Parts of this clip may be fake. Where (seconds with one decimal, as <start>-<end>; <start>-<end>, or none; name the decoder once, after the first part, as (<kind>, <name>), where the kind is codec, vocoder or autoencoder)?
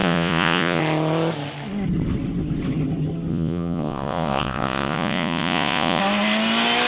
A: 0.0-0.8 (vocoder, Vocos); 3.3-6.0